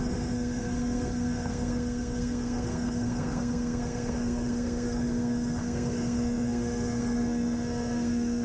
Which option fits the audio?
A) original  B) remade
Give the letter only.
B